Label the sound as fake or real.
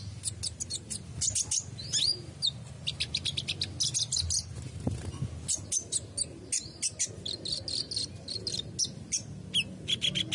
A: real